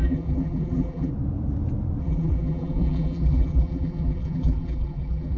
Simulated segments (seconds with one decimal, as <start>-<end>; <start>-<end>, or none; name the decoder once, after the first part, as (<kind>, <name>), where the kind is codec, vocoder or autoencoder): 0.0-1.1 (vocoder, BigVGAN v2); 2.0-5.4